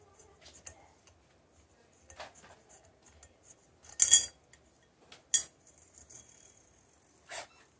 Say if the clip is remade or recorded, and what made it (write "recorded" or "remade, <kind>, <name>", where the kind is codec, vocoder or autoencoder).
recorded